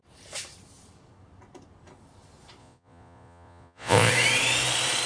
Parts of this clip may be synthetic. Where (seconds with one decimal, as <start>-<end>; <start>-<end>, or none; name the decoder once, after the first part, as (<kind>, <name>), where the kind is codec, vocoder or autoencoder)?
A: 2.6-4.1 (vocoder, Vocos)